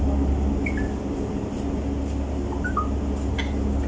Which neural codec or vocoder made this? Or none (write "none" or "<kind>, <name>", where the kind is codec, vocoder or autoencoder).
none